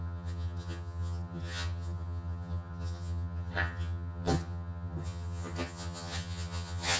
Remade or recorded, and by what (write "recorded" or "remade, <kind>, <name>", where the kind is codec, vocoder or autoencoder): remade, vocoder, HiFi-GAN